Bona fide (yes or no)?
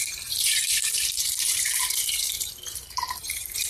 no